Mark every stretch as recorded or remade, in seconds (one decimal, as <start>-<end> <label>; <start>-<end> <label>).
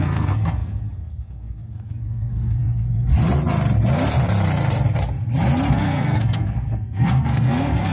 0.0-3.1 remade; 3.1-5.7 recorded; 5.7-7.9 remade